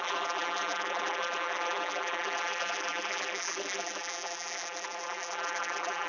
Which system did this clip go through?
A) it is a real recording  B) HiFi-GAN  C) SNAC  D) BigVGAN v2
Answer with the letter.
D